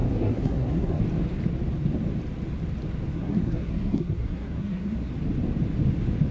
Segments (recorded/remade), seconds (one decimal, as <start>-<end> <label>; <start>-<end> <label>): 0.0-1.0 remade; 1.0-3.1 recorded; 3.1-5.1 remade; 5.1-6.3 recorded

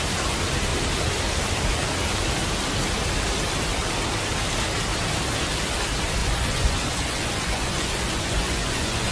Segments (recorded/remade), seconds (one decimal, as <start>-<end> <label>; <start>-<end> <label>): 0.0-6.2 recorded; 6.2-9.1 remade

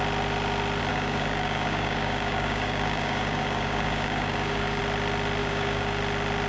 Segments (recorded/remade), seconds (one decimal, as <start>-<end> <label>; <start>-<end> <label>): 0.0-0.9 recorded; 0.9-4.8 remade; 4.8-5.4 recorded; 5.4-6.0 remade; 6.0-6.5 recorded

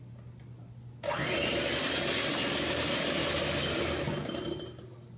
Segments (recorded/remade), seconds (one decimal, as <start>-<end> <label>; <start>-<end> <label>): 0.0-5.2 recorded